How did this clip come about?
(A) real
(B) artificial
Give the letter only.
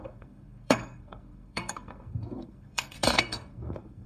B